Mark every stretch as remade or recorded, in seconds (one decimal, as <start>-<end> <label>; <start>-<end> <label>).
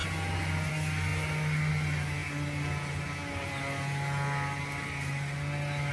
0.0-5.9 recorded